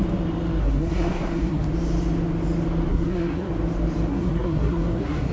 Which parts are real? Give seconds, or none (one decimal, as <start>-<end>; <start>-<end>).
0.0-0.6; 1.7-2.9; 3.5-4.1